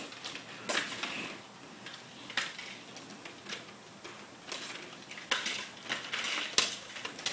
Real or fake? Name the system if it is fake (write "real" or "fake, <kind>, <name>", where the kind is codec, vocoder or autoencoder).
real